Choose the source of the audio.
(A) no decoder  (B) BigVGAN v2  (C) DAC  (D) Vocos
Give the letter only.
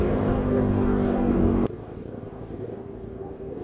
C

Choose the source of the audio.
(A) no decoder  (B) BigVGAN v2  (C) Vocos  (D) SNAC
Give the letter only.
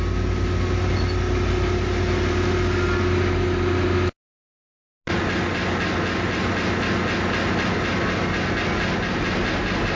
A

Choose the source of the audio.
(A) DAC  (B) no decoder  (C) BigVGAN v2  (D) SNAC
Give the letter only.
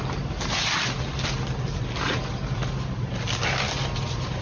B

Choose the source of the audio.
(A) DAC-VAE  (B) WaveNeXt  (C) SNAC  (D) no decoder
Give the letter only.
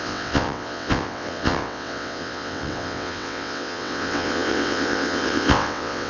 B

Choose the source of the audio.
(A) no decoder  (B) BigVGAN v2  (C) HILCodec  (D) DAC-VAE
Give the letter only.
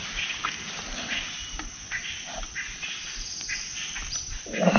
A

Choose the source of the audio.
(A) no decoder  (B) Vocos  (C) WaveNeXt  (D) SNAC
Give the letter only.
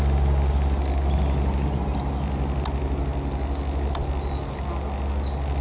A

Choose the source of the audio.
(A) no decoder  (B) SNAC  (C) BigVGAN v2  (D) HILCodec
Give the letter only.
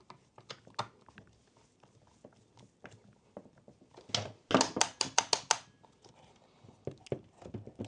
A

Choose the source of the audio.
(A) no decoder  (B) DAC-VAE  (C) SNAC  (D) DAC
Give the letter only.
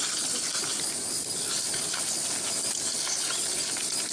A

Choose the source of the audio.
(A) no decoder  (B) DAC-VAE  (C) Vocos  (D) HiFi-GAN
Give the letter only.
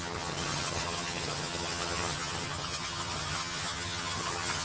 D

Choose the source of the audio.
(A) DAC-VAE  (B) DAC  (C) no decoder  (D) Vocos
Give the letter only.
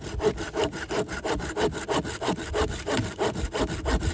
C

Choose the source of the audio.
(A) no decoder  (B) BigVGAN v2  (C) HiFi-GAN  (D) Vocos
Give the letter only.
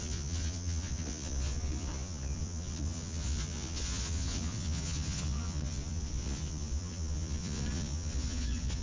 D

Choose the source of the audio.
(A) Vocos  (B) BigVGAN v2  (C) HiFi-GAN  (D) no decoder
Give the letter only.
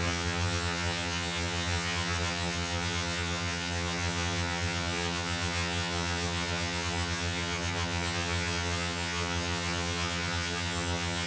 C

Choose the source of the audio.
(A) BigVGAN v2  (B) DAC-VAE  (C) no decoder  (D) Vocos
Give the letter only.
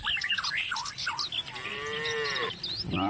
C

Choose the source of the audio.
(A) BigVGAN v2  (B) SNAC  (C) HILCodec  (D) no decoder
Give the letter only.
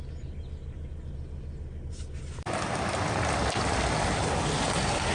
D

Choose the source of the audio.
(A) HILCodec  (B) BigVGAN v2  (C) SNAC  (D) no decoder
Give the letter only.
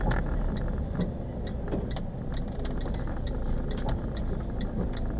D